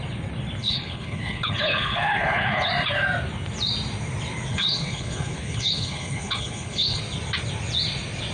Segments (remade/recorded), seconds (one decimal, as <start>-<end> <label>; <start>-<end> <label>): 0.0-0.6 recorded; 0.6-2.7 remade; 2.7-4.5 recorded; 4.5-7.0 remade; 7.0-8.3 recorded